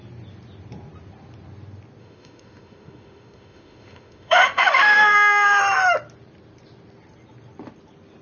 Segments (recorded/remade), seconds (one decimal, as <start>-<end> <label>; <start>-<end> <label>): 0.0-2.0 recorded; 2.0-5.6 remade; 5.6-8.2 recorded